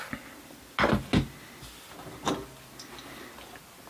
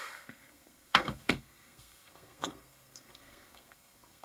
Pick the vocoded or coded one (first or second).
second